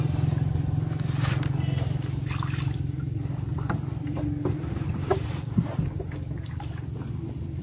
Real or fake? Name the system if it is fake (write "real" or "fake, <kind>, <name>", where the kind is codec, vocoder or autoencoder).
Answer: real